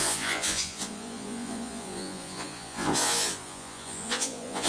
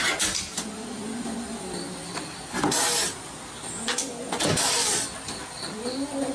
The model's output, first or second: first